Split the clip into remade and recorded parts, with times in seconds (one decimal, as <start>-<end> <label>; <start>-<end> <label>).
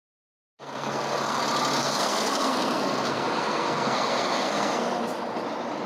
0.0-0.5 recorded; 0.5-1.4 remade; 1.4-1.8 recorded; 1.8-5.0 remade; 5.0-5.9 recorded